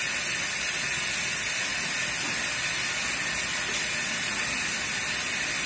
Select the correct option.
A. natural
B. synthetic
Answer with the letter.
A